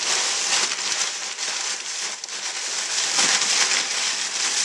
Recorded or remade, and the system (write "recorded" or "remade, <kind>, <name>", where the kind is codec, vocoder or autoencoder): remade, vocoder, BigVGAN v2